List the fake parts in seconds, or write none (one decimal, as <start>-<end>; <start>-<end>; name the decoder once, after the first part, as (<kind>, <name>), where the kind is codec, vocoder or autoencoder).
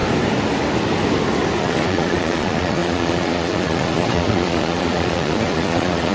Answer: 1.6-6.1 (vocoder, Vocos)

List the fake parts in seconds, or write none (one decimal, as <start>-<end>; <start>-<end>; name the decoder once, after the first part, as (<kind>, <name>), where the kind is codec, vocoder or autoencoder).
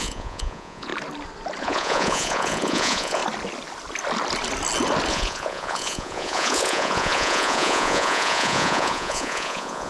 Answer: 0.0-0.9 (vocoder, Vocos); 1.6-3.2; 5.1-9.9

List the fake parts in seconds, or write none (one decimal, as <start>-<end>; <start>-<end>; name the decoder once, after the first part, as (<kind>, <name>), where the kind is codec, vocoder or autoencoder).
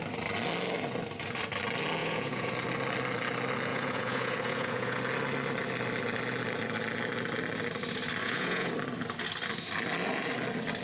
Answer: 2.0-2.5 (vocoder, Vocos); 3.7-5.0; 8.2-8.7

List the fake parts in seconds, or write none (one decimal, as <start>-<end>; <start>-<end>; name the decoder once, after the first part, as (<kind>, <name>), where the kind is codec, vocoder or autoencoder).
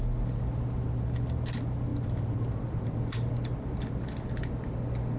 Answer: none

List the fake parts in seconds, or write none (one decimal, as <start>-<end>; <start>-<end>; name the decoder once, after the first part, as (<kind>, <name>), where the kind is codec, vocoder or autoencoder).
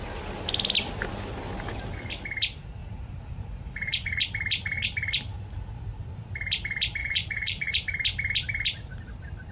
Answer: 2.8-4.2 (vocoder, Vocos); 7.0-7.7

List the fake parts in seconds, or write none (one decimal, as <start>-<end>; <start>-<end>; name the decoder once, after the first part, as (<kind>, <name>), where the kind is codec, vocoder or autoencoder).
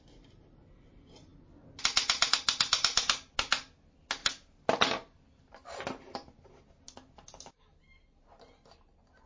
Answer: none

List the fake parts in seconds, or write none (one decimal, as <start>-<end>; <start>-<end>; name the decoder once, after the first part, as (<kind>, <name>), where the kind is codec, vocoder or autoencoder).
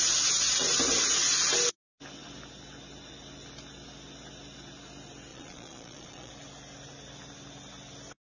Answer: 5.3-6.3 (vocoder, Vocos)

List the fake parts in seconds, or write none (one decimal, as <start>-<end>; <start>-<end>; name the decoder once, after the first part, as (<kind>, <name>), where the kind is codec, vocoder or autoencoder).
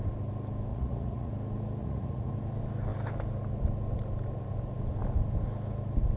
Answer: 0.7-1.3 (vocoder, Vocos); 1.8-2.3